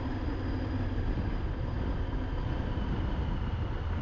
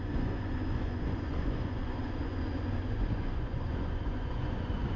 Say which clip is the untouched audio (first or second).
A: first